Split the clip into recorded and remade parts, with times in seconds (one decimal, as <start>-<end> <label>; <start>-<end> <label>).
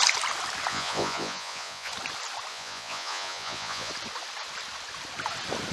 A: 0.0-0.7 recorded; 0.7-1.9 remade; 1.9-2.5 recorded; 2.5-3.9 remade; 3.9-5.7 recorded